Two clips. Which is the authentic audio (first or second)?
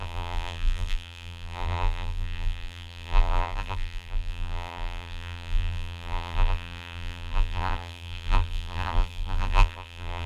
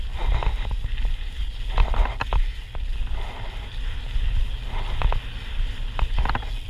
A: second